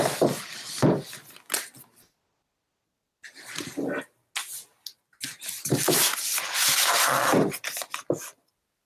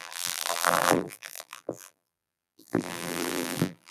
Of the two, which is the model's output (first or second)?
second